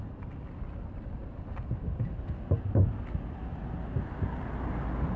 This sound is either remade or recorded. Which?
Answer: recorded